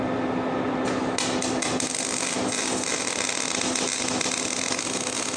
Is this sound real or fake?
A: real